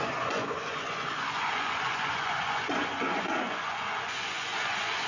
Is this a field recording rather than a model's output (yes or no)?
no